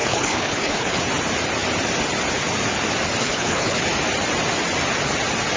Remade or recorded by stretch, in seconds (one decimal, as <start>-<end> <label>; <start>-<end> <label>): 0.0-1.0 remade; 1.0-3.2 recorded; 3.2-3.8 remade; 3.8-5.6 recorded